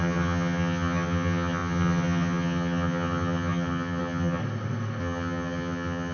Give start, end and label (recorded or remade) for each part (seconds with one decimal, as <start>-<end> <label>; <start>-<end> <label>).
0.0-4.4 remade; 4.4-5.0 recorded; 5.0-6.1 remade

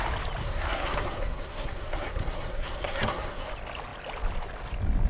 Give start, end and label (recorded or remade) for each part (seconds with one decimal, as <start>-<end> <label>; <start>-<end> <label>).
0.0-0.4 recorded; 0.4-3.5 remade; 3.5-5.1 recorded